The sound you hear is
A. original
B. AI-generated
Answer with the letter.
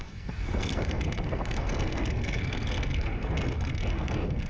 B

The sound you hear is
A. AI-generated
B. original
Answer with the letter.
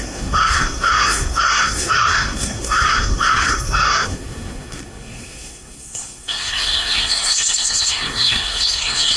A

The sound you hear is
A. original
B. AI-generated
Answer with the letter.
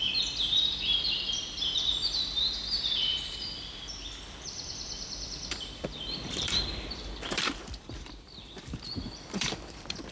B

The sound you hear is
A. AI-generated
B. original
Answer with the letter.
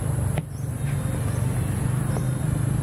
B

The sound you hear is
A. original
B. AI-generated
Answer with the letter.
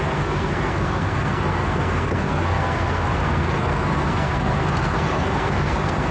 B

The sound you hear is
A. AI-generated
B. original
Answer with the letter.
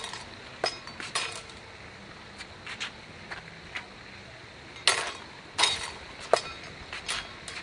B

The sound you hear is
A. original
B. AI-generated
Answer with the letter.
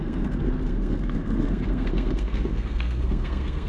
B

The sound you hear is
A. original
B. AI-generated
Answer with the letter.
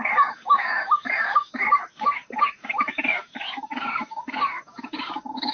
B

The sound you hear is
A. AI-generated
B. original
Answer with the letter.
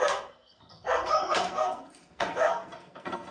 A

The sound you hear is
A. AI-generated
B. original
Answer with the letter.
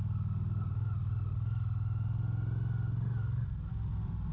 B